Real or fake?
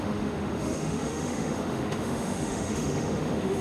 fake